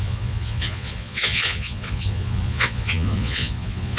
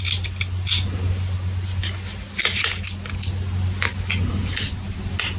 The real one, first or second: second